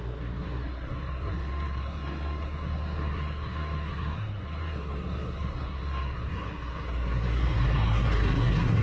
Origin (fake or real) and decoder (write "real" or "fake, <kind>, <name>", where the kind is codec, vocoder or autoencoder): fake, codec, SNAC